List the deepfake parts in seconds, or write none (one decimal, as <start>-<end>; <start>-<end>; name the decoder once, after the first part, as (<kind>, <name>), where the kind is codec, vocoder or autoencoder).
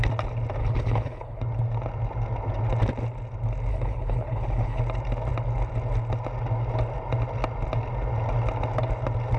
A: 0.6-1.4 (codec, HILCodec); 3.7-4.8